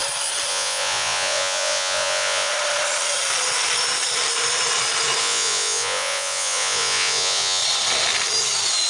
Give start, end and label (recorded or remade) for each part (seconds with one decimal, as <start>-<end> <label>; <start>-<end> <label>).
0.0-0.5 recorded; 0.5-2.5 remade; 2.5-5.2 recorded; 5.2-7.6 remade; 7.6-8.9 recorded